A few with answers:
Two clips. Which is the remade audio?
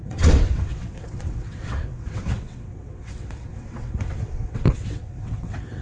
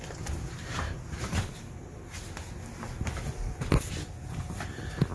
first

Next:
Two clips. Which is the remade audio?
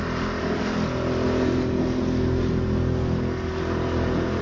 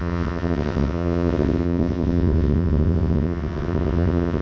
second